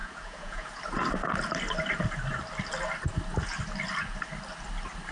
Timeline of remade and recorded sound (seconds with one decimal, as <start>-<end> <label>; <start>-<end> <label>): 0.0-0.8 remade; 0.8-5.1 recorded